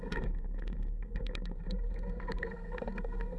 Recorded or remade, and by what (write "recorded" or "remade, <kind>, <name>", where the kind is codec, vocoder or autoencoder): remade, codec, SNAC